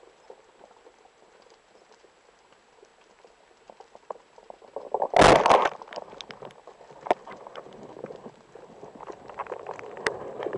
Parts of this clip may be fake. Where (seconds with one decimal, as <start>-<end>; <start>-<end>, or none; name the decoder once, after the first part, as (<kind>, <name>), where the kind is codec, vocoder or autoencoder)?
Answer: none